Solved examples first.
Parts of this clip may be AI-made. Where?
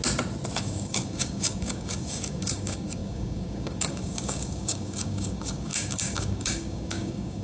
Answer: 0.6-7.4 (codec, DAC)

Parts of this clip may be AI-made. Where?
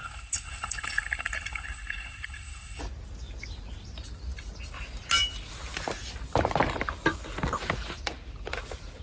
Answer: 0.0-2.8 (codec, HILCodec)